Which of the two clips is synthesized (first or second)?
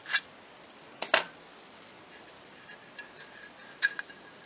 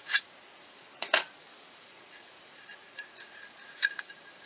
second